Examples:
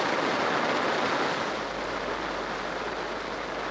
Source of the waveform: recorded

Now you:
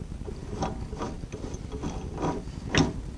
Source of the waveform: recorded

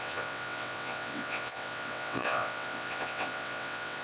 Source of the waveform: remade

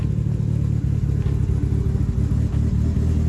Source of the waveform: recorded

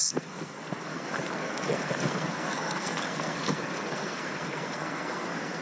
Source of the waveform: remade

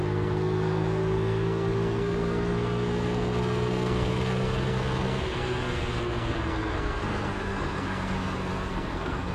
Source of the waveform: remade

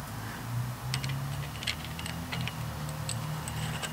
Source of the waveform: recorded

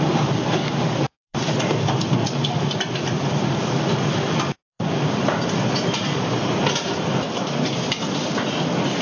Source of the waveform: remade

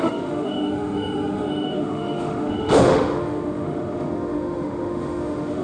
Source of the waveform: remade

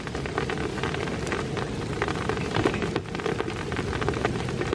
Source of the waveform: recorded